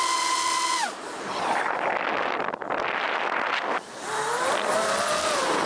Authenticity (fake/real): real